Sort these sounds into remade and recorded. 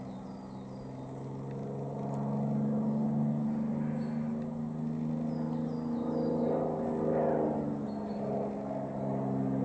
recorded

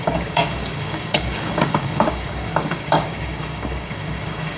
remade